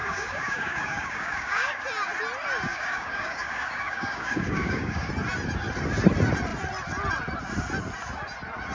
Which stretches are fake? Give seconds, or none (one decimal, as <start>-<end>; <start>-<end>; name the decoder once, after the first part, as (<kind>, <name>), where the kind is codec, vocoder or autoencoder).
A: 0.0-1.8 (codec, DAC); 2.7-5.1